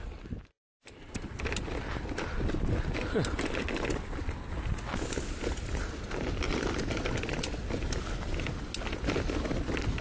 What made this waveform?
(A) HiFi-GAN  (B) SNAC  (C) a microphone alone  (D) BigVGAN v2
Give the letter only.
C